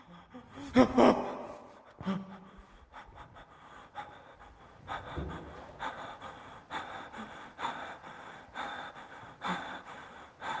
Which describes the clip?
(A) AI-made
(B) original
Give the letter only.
B